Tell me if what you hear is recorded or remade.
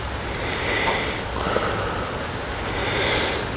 recorded